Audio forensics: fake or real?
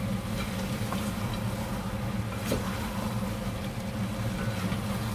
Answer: real